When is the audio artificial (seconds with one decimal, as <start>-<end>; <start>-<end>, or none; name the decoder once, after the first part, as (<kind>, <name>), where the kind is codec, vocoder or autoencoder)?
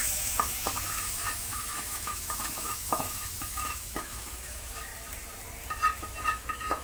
0.0-4.9 (autoencoder, DAC-VAE); 6.0-6.8